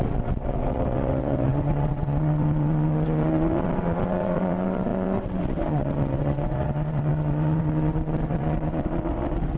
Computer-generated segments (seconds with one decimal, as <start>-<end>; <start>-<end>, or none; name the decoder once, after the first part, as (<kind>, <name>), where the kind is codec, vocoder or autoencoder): 0.0-9.6 (vocoder, WaveNeXt)